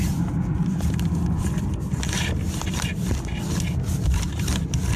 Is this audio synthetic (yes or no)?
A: no